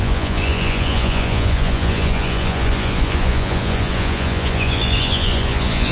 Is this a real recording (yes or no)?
no